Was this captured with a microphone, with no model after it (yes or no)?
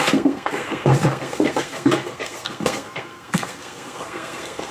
no